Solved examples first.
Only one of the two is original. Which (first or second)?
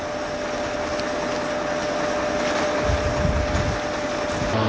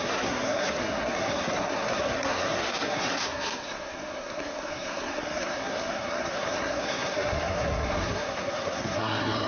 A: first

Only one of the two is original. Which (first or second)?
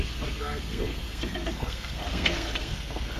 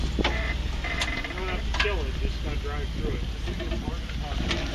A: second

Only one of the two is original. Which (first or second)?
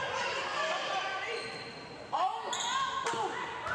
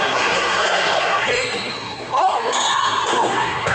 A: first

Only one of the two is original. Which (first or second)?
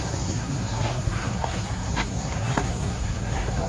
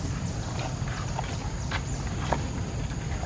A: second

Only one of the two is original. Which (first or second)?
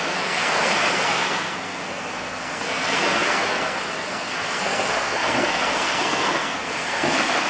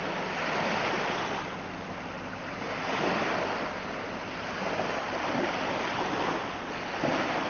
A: second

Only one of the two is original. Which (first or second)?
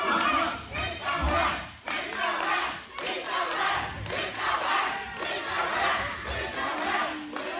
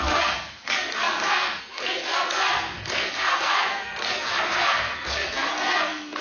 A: first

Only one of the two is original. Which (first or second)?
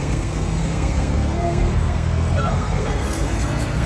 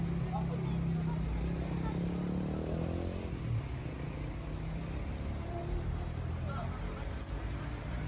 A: second